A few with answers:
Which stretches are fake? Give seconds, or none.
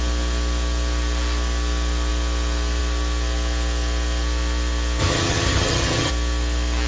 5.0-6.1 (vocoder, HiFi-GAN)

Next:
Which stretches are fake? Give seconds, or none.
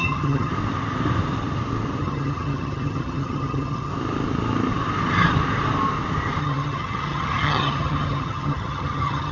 0.0-0.5 (vocoder, HiFi-GAN); 2.0-3.9; 6.4-9.3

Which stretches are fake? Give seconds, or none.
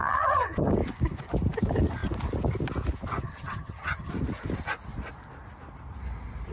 0.0-0.7 (vocoder, HiFi-GAN); 3.2-4.1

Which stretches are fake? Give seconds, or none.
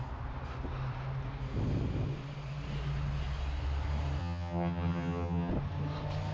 4.2-5.5 (vocoder, HiFi-GAN)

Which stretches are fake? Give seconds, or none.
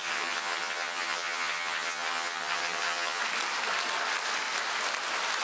0.0-3.2 (vocoder, HiFi-GAN)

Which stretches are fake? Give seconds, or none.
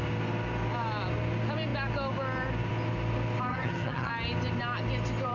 3.5-4.1 (vocoder, HiFi-GAN)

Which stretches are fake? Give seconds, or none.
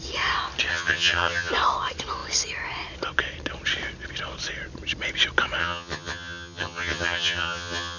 0.7-1.5 (vocoder, HiFi-GAN); 5.6-8.0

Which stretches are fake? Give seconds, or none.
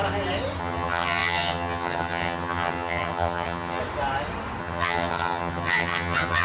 0.6-3.8 (vocoder, HiFi-GAN); 4.6-6.4